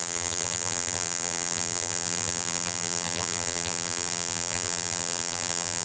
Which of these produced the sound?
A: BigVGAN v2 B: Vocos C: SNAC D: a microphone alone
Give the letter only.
A